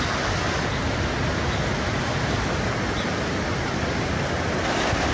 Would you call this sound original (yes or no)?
yes